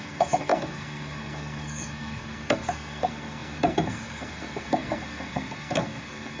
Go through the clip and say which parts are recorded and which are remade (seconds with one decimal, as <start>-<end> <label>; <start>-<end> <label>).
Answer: 0.0-6.4 remade